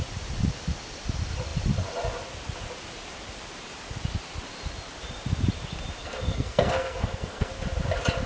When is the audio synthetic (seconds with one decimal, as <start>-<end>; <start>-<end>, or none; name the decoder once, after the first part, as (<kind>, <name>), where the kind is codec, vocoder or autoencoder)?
6.0-7.5 (codec, SNAC)